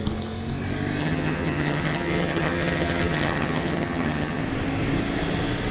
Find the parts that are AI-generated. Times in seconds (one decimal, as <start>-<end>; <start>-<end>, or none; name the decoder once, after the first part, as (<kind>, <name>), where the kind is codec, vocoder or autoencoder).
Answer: 1.0-4.4 (vocoder, HiFi-GAN)